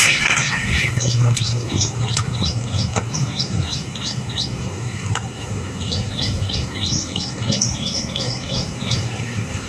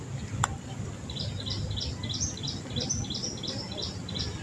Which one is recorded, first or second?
second